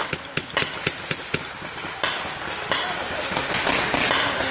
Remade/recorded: recorded